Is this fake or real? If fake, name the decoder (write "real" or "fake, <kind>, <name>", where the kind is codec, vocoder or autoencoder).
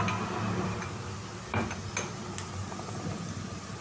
real